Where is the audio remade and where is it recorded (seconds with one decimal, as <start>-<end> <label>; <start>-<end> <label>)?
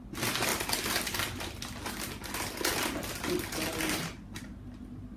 0.0-5.2 recorded